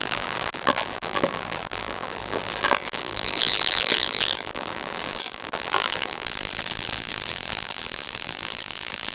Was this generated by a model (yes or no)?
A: yes